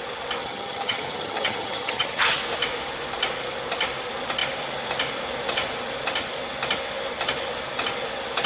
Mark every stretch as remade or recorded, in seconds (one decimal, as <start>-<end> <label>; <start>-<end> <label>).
0.0-0.4 recorded; 0.4-2.4 remade; 2.4-8.5 recorded